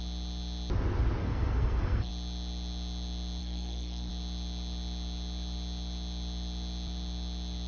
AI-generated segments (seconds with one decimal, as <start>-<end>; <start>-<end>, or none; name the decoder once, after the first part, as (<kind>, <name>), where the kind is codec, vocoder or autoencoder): 1.2-2.1 (codec, SNAC); 3.4-4.1